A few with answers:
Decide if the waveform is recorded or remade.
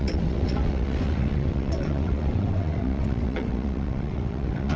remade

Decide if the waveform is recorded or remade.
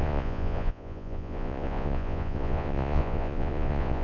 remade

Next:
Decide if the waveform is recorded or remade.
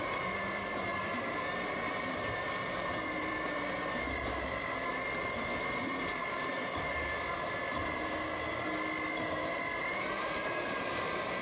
remade